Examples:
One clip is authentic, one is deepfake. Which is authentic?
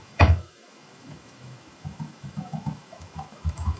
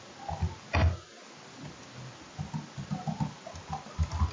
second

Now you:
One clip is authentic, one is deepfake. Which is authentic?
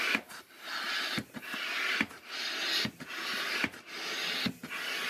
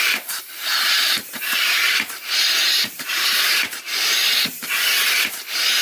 first